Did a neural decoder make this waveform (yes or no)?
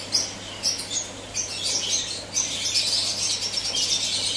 no